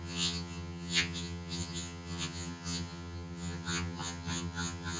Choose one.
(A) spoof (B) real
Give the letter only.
A